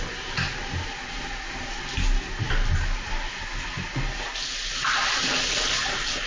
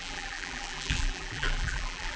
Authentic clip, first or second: first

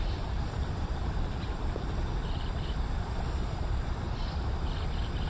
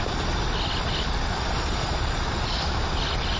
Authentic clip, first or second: second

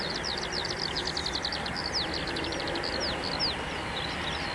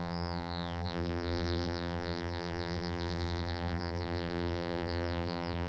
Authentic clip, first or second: first